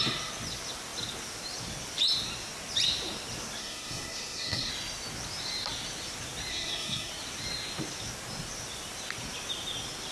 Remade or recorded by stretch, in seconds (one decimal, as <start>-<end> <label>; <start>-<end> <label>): 0.0-3.6 recorded; 3.6-4.7 remade; 4.7-6.5 recorded; 6.5-7.1 remade; 7.1-10.1 recorded